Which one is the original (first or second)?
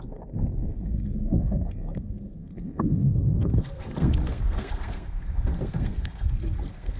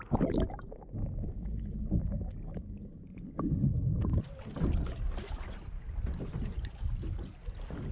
second